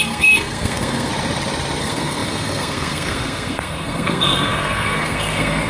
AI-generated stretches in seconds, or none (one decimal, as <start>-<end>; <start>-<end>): 0.0-1.1; 1.8-5.7